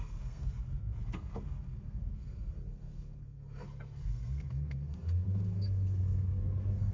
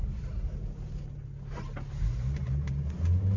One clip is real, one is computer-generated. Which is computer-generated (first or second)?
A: first